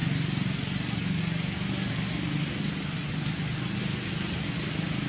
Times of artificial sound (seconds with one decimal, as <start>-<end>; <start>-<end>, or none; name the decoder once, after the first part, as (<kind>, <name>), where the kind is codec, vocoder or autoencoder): none